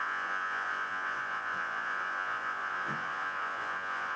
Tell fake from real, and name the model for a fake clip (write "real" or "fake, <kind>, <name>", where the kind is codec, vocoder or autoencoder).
fake, vocoder, Vocos